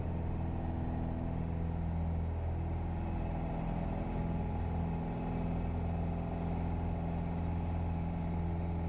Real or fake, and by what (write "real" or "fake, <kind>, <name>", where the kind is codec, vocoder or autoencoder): real